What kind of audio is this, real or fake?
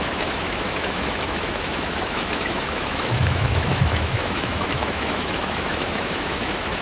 fake